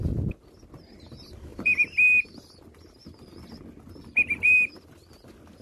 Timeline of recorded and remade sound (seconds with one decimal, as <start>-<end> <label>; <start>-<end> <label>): 0.0-1.5 recorded; 1.5-4.8 remade; 4.8-5.6 recorded